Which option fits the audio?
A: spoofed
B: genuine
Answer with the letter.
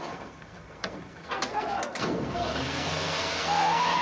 A